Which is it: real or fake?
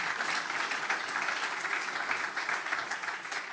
real